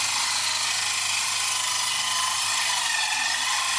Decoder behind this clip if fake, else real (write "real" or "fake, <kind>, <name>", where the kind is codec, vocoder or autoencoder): real